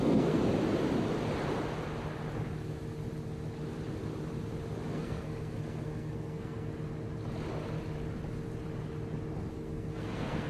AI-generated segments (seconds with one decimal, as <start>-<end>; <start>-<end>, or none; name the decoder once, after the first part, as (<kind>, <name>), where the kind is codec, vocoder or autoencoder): 0.0-0.4 (codec, SNAC); 4.9-6.7; 9.5-10.5